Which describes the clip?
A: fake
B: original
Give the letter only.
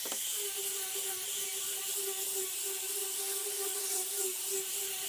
B